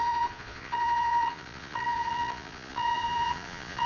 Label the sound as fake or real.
fake